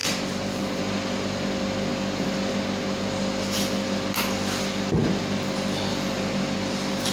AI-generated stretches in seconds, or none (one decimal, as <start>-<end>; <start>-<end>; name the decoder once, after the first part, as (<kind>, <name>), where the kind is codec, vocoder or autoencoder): 0.0-0.8 (vocoder, BigVGAN v2); 5.9-6.4